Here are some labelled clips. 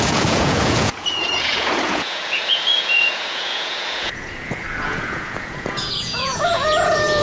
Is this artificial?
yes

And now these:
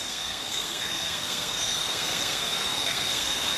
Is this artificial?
yes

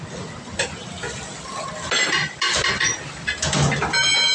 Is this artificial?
no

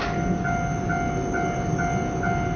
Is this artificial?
no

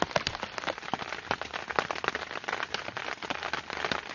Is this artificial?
no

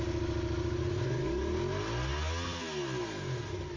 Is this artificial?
no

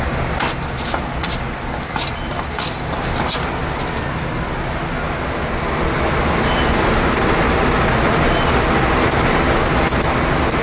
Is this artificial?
no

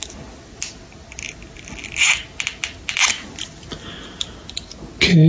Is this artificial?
no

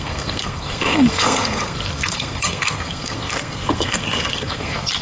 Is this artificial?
yes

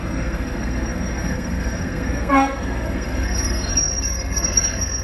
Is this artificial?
yes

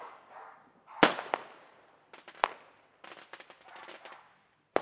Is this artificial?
no